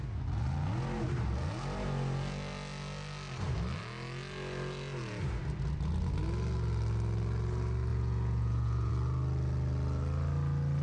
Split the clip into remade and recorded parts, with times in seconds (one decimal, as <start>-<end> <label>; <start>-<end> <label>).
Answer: 0.0-7.9 recorded; 7.9-8.9 remade; 8.9-10.8 recorded